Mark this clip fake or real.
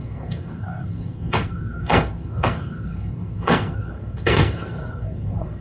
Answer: fake